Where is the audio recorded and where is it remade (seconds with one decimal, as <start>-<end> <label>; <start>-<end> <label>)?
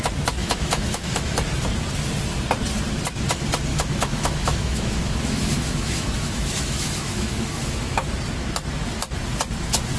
0.0-0.4 recorded; 0.4-1.4 remade; 1.4-3.7 recorded; 3.7-8.1 remade; 8.1-10.0 recorded